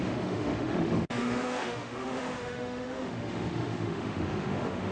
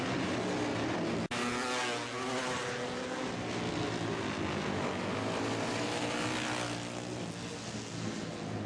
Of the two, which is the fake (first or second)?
first